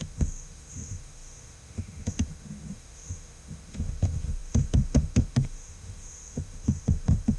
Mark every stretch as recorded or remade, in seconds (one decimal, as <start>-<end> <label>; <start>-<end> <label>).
0.0-7.4 remade